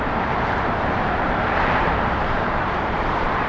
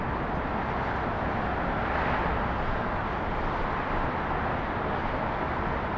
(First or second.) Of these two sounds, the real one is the second